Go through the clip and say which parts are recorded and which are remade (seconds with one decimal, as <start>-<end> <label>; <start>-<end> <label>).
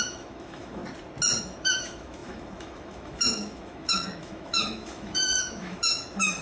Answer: 0.0-0.8 remade; 0.8-1.4 recorded; 1.4-6.4 remade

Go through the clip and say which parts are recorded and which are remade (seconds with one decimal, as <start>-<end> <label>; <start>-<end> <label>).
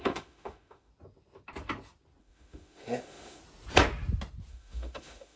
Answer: 0.0-0.9 remade; 0.9-2.2 recorded; 2.2-3.4 remade; 3.4-4.5 recorded; 4.5-5.4 remade